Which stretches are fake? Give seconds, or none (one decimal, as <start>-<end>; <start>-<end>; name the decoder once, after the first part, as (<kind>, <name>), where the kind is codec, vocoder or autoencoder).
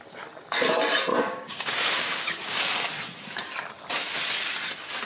1.1-2.7 (codec, DAC)